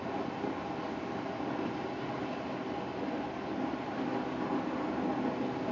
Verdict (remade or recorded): recorded